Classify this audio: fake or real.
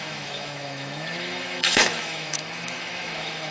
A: fake